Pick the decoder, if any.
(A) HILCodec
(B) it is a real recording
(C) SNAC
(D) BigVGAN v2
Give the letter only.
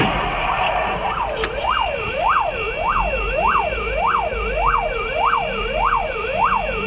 B